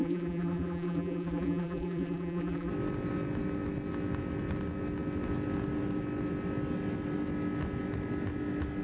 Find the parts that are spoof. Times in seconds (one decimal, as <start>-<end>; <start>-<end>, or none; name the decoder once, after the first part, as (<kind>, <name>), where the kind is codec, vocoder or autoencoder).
0.0-2.7 (vocoder, BigVGAN v2)

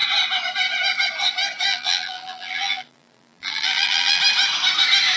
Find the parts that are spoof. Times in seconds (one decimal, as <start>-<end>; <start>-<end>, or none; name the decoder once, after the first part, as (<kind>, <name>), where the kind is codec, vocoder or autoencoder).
1.7-4.2 (vocoder, BigVGAN v2)

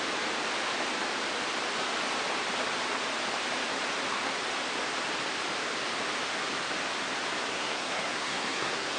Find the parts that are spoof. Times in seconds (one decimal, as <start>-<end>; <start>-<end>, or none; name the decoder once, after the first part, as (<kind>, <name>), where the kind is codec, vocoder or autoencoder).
7.5-9.0 (codec, SNAC)

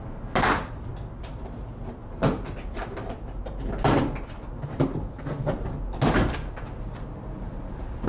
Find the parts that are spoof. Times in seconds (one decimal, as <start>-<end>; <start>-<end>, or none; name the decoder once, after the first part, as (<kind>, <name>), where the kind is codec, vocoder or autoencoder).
none

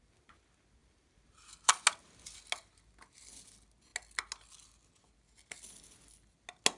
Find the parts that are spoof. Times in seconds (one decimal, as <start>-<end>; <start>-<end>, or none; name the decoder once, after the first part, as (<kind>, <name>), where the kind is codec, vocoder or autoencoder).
0.8-1.7 (vocoder, BigVGAN v2)

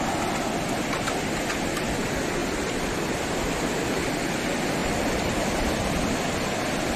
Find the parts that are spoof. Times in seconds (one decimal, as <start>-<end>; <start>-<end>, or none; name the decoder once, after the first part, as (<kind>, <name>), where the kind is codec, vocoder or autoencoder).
2.4-4.3 (vocoder, BigVGAN v2); 4.8-5.7

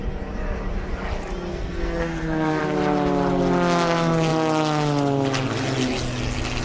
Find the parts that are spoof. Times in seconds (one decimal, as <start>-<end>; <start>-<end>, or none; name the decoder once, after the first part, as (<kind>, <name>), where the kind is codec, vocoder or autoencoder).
1.5-2.6 (codec, SNAC)